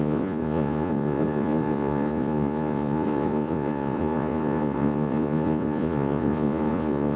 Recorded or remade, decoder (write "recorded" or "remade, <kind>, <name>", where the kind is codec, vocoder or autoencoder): remade, vocoder, Vocos